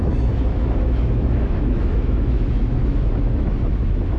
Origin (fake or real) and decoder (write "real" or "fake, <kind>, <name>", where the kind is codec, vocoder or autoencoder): fake, autoencoder, DAC-VAE